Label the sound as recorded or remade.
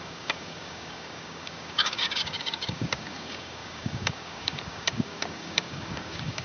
remade